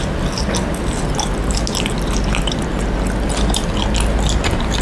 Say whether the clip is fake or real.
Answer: real